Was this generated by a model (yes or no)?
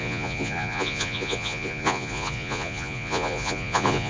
yes